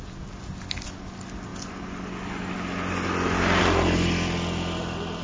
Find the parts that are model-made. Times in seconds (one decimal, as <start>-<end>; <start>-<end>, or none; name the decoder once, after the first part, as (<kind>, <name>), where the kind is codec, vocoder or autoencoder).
none